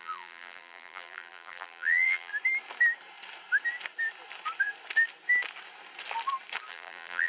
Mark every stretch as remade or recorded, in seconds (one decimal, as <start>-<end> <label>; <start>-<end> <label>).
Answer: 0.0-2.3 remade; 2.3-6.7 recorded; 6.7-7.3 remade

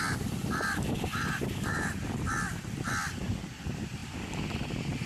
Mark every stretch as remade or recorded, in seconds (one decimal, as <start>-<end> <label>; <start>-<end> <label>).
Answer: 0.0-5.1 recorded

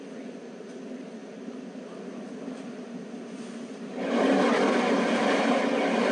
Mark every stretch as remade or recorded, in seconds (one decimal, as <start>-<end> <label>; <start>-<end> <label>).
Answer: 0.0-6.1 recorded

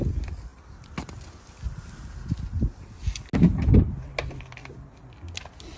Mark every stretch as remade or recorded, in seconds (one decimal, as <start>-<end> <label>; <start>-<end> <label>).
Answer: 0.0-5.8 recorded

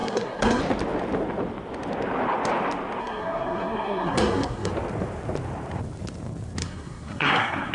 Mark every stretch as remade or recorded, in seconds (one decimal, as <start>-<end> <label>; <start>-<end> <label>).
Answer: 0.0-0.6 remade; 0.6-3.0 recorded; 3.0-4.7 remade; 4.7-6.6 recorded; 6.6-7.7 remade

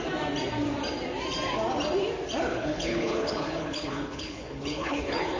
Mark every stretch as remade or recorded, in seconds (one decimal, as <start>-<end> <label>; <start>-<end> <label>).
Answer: 0.0-2.5 recorded; 2.5-5.4 remade

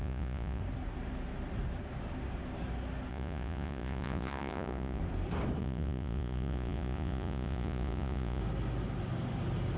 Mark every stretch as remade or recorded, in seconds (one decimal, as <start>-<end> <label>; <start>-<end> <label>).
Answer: 0.0-0.6 remade; 0.6-3.1 recorded; 3.1-5.0 remade; 5.0-5.6 recorded; 5.6-8.4 remade; 8.4-9.8 recorded